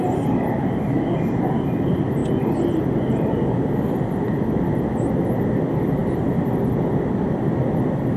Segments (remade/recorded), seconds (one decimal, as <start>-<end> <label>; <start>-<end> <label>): 0.0-8.2 recorded